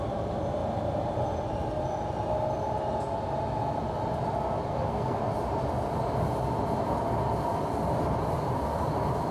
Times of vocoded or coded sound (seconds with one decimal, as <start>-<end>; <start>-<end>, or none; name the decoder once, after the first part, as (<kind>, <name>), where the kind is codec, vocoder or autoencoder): 4.7-5.2 (codec, SNAC)